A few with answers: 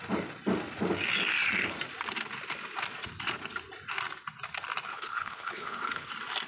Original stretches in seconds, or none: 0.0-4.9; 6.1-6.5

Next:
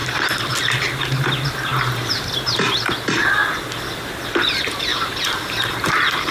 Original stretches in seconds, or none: 0.8-4.9

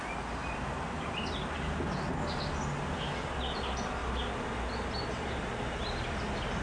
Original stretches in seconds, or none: 0.0-6.6

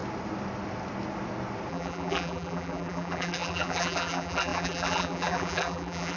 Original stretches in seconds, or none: 0.0-1.7

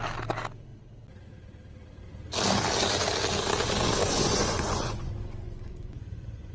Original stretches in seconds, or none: 0.0-4.0

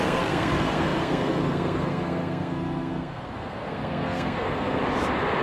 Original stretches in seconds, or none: 4.8-5.4